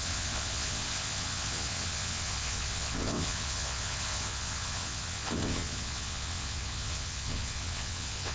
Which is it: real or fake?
fake